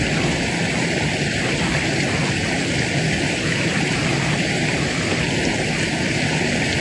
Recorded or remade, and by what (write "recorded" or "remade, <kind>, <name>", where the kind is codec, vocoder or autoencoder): recorded